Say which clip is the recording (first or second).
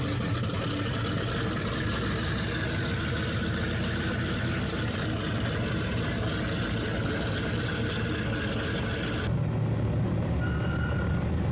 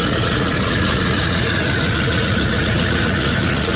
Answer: first